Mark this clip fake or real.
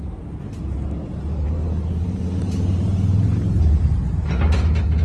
fake